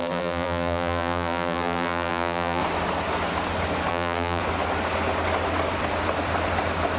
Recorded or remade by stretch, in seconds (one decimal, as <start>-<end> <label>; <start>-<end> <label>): 0.0-2.6 remade; 2.6-3.9 recorded; 3.9-4.4 remade; 4.4-7.0 recorded